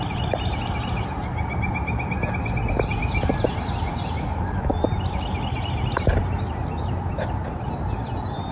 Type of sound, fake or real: real